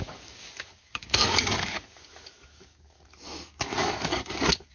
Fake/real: fake